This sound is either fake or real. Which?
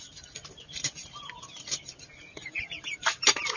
real